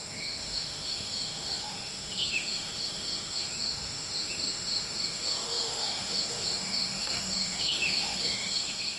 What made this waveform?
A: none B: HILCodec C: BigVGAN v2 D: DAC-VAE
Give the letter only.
D